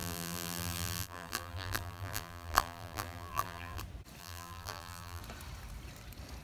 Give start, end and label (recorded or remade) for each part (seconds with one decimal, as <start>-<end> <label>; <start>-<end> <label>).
0.0-3.8 remade; 3.8-4.2 recorded; 4.2-5.2 remade; 5.2-6.4 recorded

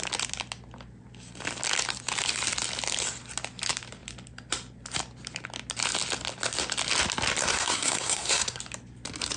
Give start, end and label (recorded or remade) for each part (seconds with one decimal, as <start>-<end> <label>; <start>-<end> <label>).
0.0-7.4 recorded; 7.4-8.6 remade; 8.6-9.4 recorded